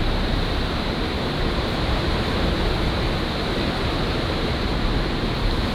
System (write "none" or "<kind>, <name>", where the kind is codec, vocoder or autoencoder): vocoder, BigVGAN v2